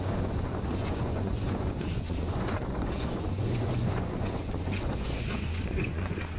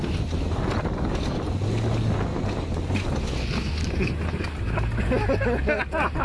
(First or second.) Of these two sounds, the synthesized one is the first